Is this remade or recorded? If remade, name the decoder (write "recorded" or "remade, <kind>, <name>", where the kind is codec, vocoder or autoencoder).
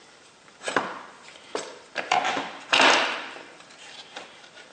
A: remade, vocoder, BigVGAN v2